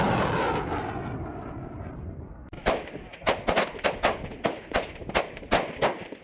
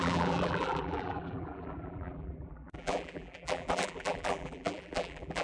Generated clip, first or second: second